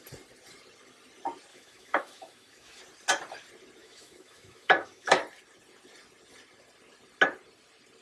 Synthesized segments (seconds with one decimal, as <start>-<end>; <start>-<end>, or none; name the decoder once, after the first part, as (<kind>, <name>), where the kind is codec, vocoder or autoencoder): 1.5-2.8 (autoencoder, DAC-VAE); 3.8-5.2